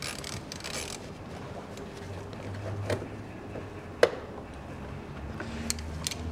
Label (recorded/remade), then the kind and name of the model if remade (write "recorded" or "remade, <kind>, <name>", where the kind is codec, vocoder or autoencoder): recorded